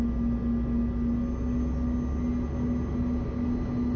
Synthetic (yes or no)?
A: no